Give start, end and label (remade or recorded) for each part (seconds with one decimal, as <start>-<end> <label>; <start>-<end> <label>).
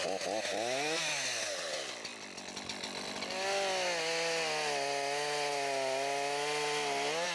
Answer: 0.0-7.3 recorded